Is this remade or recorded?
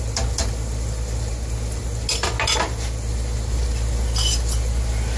recorded